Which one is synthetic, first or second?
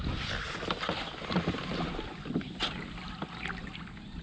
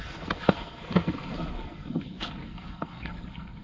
second